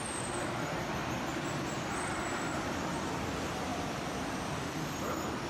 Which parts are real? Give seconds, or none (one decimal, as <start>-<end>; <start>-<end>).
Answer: 0.0-2.1; 3.0-3.7; 4.7-5.5

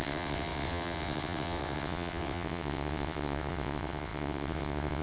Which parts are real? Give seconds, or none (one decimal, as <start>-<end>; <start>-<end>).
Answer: none

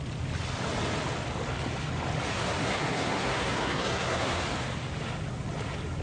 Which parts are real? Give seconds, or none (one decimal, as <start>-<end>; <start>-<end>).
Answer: 0.0-2.3; 4.4-6.0

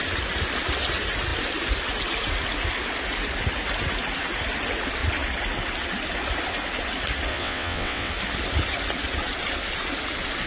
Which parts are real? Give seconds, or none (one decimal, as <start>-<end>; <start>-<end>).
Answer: 0.0-7.3; 8.1-10.5

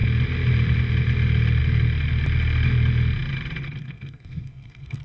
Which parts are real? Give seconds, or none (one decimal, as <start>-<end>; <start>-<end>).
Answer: 0.0-3.8

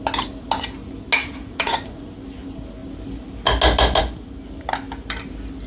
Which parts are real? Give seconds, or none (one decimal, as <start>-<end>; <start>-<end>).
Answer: 0.0-1.2; 2.1-5.7